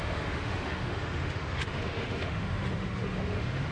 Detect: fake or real fake